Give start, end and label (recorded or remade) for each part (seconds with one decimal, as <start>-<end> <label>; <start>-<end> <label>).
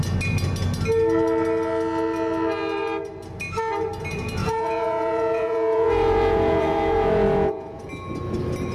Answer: 0.0-4.4 recorded; 4.4-7.9 remade; 7.9-8.7 recorded